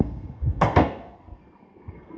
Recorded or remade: remade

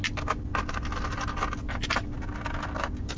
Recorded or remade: recorded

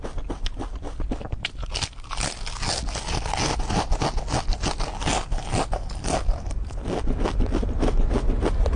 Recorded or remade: recorded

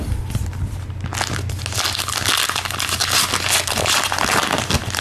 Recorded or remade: recorded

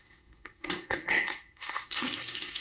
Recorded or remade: remade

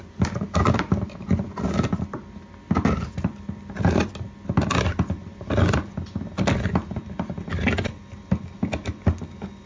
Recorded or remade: recorded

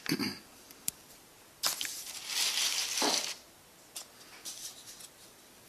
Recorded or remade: recorded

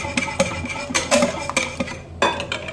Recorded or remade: recorded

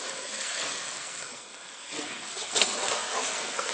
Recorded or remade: remade